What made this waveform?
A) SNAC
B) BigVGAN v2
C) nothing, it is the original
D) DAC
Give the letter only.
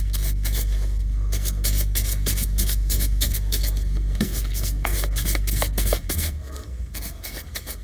A